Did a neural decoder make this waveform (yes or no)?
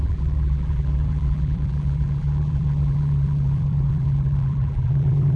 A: yes